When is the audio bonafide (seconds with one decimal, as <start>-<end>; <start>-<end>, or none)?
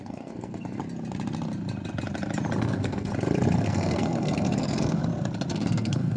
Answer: 0.8-2.6; 3.1-3.6; 5.0-5.5